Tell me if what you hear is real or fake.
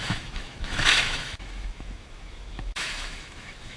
fake